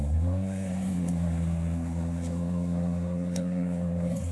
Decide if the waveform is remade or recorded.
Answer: remade